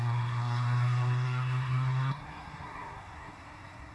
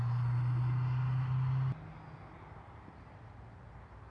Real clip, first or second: second